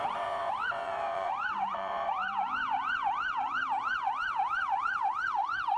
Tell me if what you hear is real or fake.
fake